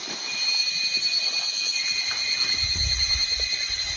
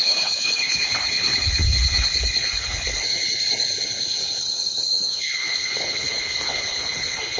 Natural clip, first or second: first